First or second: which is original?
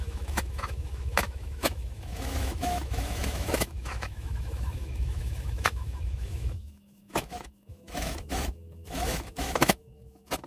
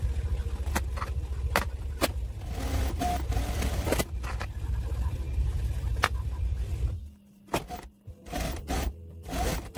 second